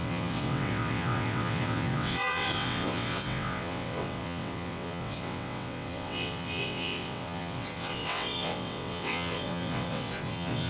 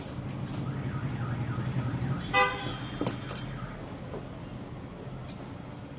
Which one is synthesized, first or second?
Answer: first